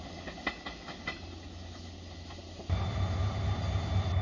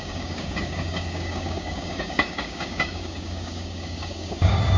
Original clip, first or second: first